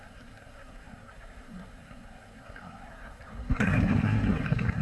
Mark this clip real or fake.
fake